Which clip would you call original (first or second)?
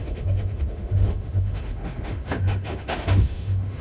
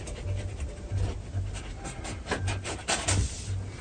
second